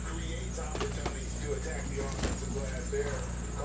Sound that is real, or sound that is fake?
real